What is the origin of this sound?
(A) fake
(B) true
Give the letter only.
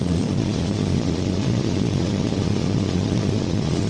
A